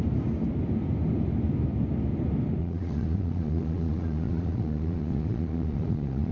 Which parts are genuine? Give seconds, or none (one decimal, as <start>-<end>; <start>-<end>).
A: 0.0-2.6